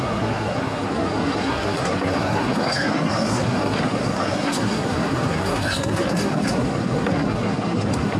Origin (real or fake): fake